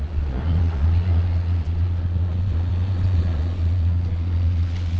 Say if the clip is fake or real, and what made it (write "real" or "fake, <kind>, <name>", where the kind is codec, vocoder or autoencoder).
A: fake, vocoder, Vocos